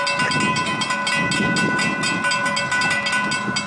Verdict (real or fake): real